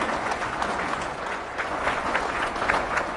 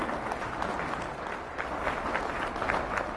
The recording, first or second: second